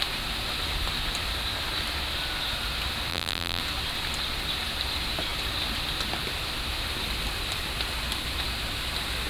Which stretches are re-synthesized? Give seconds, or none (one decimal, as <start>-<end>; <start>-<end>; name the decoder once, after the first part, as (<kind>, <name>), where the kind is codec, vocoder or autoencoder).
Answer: 3.1-3.6 (vocoder, BigVGAN v2)